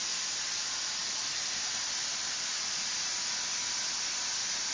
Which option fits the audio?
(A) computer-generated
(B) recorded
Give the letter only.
B